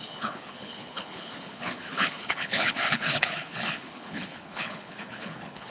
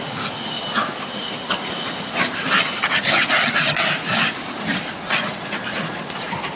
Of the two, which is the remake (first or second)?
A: first